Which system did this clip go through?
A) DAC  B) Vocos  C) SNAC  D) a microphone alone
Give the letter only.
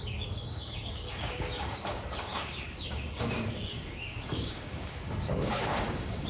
A